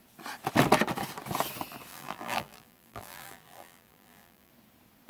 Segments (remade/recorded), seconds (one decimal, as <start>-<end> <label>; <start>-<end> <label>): 0.0-1.9 recorded; 1.9-4.5 remade; 4.5-5.1 recorded